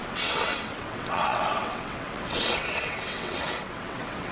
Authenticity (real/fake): fake